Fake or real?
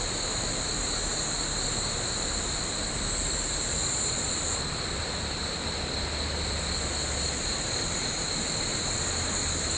real